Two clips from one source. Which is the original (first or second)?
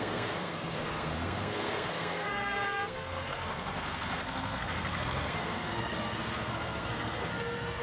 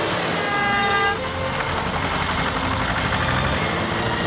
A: second